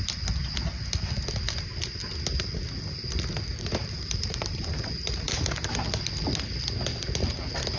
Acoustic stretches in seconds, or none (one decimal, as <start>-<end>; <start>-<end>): 0.0-3.5; 5.3-7.8